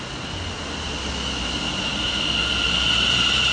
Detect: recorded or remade recorded